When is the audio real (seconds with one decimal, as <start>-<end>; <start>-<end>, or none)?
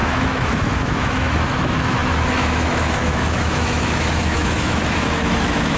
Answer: none